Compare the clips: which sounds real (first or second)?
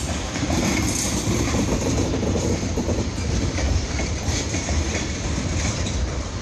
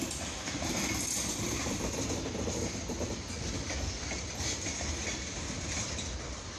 second